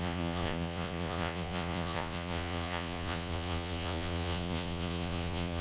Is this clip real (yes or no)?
no